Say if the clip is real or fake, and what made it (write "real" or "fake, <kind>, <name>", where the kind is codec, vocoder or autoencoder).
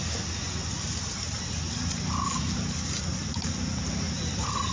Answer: real